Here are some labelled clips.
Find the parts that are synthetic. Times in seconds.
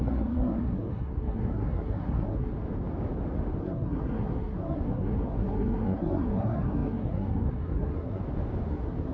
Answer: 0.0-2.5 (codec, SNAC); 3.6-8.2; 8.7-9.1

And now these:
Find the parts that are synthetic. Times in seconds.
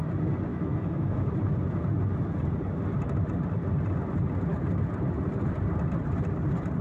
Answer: 0.5-1.3 (autoencoder, DAC-VAE)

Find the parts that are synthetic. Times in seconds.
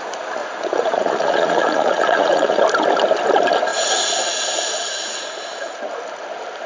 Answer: 0.4-2.6 (vocoder, Vocos); 3.7-5.8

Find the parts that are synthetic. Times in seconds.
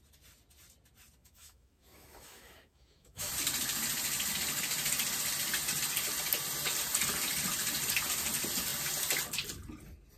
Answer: 1.2-3.3 (autoencoder, DAC-VAE)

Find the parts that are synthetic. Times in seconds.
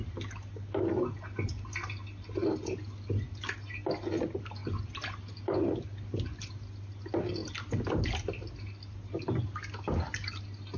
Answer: none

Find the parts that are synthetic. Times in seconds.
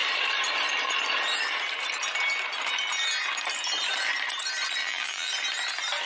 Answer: 4.8-5.3 (vocoder, BigVGAN v2)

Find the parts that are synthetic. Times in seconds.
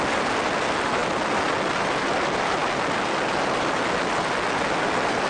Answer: none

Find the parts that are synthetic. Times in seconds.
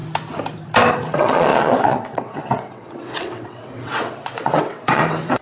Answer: 0.9-5.4 (vocoder, WaveNeXt)